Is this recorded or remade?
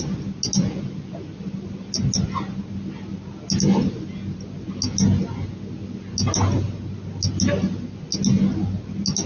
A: recorded